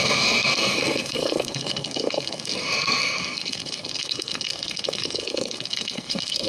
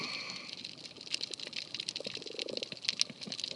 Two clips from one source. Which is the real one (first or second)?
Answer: second